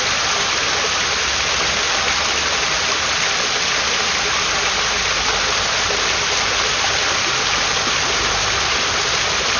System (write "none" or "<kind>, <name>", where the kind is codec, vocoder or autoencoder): none